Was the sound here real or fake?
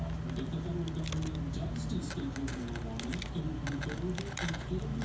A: real